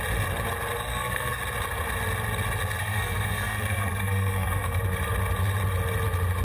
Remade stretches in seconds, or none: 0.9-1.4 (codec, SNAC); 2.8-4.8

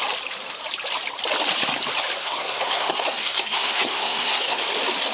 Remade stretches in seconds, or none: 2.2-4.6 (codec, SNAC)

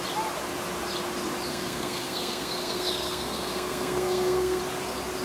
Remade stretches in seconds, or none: 1.5-4.6 (codec, SNAC)